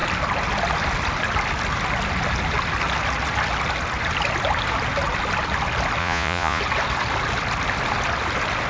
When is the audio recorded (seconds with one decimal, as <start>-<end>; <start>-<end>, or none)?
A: 0.0-6.0; 6.6-8.7